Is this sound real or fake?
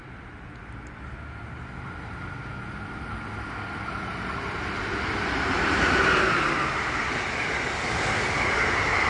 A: real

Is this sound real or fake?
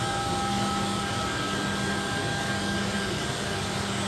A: fake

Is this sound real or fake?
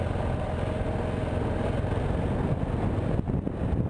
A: real